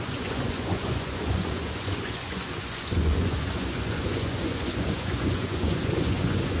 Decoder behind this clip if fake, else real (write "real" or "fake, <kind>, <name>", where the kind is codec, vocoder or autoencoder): fake, vocoder, Vocos